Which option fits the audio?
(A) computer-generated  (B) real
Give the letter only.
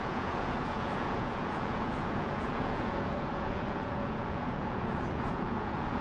A